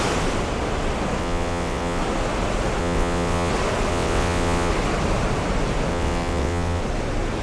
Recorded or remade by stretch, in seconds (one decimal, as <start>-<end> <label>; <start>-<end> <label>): 0.0-1.2 recorded; 1.2-2.0 remade; 2.0-2.8 recorded; 2.8-3.5 remade; 3.5-3.9 recorded; 3.9-4.7 remade; 4.7-5.9 recorded; 5.9-6.8 remade; 6.8-7.4 recorded